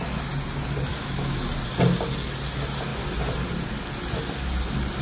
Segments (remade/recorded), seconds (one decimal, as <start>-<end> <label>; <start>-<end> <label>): 0.0-0.9 recorded; 0.9-1.4 remade; 1.4-5.0 recorded